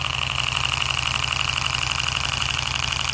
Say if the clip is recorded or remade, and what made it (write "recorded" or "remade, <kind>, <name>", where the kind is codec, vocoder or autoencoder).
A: recorded